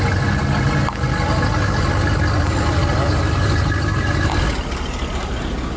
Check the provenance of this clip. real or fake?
real